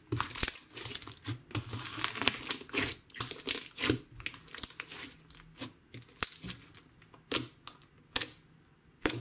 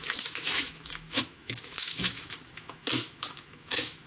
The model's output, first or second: second